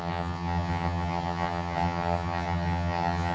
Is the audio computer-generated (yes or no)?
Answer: yes